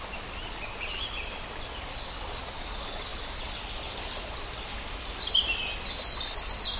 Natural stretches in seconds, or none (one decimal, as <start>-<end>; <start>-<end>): 0.0-6.8